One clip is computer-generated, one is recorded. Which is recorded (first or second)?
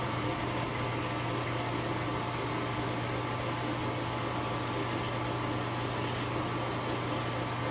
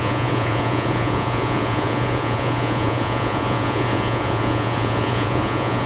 first